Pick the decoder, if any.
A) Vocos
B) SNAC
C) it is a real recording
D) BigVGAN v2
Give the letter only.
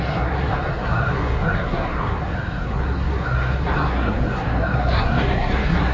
B